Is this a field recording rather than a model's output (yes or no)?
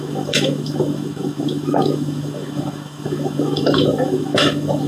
no